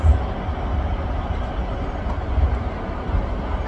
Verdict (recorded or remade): recorded